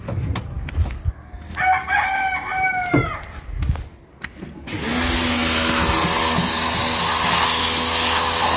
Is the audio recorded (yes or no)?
yes